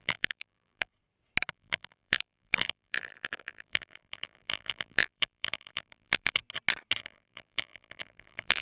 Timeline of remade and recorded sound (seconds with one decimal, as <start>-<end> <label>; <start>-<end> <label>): 0.0-0.9 remade; 0.9-1.5 recorded; 1.5-6.4 remade; 6.4-7.0 recorded; 7.0-8.6 remade